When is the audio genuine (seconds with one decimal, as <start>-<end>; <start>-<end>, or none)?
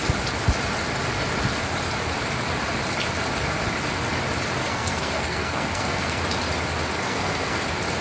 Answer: 0.0-4.6; 6.2-7.0; 7.6-8.0